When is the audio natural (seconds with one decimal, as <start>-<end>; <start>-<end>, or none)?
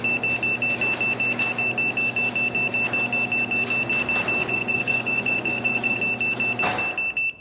0.0-4.4; 6.0-7.4